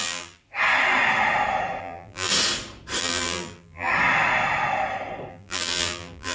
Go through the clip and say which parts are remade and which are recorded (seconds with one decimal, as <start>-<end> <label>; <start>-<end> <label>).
0.0-0.4 remade; 0.4-1.8 recorded; 1.8-2.3 remade; 2.3-3.0 recorded; 3.0-3.9 remade; 3.9-5.3 recorded; 5.3-6.3 remade